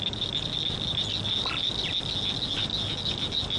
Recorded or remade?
recorded